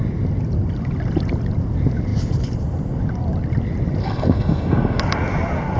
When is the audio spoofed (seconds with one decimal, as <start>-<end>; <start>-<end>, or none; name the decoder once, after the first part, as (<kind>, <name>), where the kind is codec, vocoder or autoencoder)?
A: 4.0-5.0 (codec, SNAC)